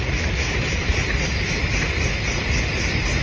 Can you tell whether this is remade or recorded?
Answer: recorded